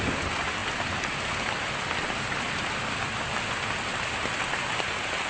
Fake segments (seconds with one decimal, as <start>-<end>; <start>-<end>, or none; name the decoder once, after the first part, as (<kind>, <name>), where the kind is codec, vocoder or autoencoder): none